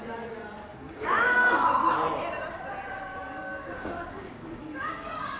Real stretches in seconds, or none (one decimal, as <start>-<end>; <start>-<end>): 0.0-0.7; 1.7-3.1